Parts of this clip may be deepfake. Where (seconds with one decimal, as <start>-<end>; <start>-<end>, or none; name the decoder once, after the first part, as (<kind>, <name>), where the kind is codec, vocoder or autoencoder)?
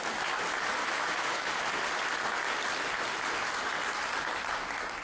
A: 0.8-1.5 (autoencoder, DAC-VAE)